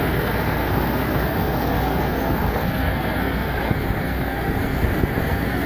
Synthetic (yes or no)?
yes